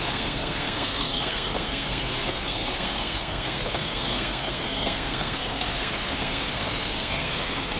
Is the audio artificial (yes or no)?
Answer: yes